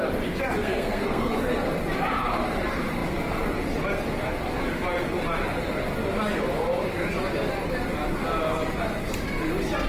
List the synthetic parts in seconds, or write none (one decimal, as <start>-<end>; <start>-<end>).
0.6-1.5